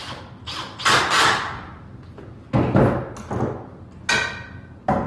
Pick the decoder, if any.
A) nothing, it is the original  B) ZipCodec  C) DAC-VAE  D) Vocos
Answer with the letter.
A